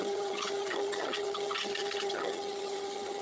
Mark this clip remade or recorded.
remade